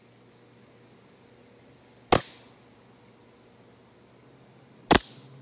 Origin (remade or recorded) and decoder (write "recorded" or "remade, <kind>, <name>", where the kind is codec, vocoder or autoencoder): recorded